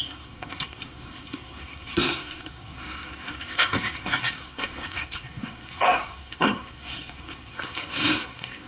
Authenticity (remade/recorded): remade